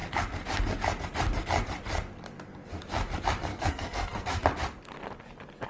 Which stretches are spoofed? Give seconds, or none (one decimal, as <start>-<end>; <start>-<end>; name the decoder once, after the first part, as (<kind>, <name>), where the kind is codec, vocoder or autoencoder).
3.5-4.4 (codec, SNAC)

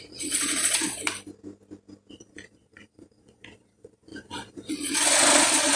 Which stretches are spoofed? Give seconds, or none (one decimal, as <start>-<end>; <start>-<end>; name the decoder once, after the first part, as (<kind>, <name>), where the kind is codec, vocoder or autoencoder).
0.0-1.0 (vocoder, Vocos); 2.1-5.8

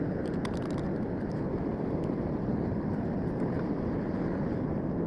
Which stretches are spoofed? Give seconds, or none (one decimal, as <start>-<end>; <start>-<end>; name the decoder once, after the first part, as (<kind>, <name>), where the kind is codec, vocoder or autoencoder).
1.7-3.7 (vocoder, BigVGAN v2)

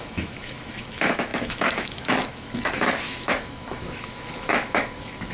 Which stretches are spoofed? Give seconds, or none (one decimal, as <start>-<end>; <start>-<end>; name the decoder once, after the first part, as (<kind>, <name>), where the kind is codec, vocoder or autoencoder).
0.0-5.3 (autoencoder, DAC-VAE)

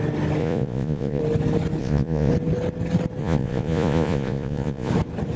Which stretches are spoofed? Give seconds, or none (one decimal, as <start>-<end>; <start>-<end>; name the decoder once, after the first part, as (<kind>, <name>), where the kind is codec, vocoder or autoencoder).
0.4-1.2 (vocoder, Vocos); 1.8-2.3; 3.2-4.9

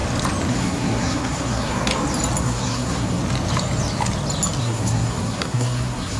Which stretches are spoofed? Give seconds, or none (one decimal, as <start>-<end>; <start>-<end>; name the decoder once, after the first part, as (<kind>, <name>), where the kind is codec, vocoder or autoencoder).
0.5-1.9 (codec, SNAC); 2.4-3.2; 4.6-6.2